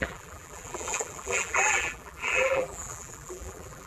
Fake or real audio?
fake